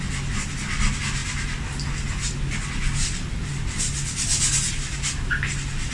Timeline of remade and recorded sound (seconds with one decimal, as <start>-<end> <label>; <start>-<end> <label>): 0.0-5.9 recorded